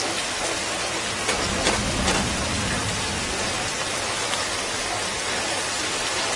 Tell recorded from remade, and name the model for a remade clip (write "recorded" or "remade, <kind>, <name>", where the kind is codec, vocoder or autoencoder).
recorded